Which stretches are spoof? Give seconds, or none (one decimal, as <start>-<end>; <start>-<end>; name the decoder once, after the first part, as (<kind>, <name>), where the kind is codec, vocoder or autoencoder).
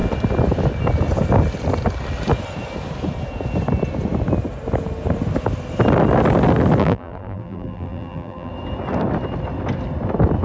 6.8-8.5 (vocoder, BigVGAN v2)